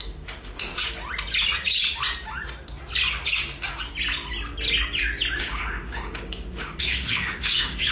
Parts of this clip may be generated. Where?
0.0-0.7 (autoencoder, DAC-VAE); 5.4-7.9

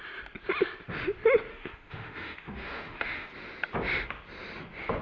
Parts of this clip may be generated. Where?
1.5-3.3 (autoencoder, DAC-VAE)

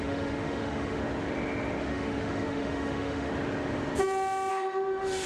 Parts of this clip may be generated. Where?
0.0-1.0 (autoencoder, DAC-VAE); 1.8-3.3; 4.5-5.3

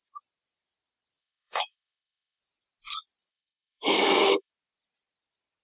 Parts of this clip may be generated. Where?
1.2-2.4 (autoencoder, DAC-VAE); 3.3-4.5

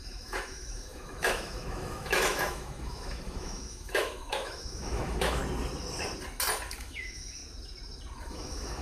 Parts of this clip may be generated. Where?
0.0-5.4 (autoencoder, DAC-VAE); 6.8-7.4; 8.2-8.8

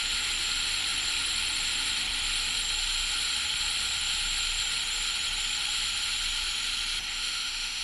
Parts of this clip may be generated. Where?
7.1-7.8 (autoencoder, DAC-VAE)

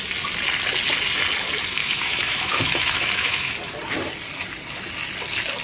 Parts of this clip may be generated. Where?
1.8-3.5 (autoencoder, DAC-VAE)